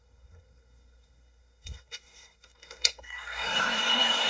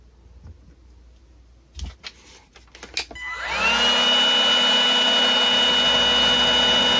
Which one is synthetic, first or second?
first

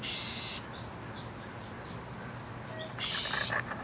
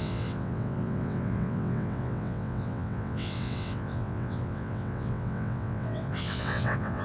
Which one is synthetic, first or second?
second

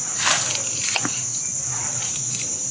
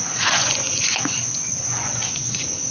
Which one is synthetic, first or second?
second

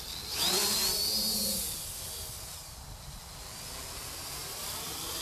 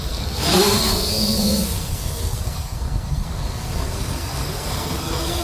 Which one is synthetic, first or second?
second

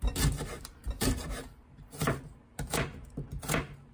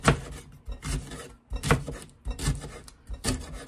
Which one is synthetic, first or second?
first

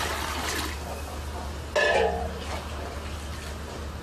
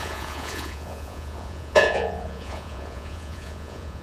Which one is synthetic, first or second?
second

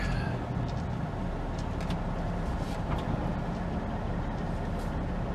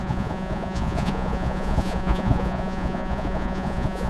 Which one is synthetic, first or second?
second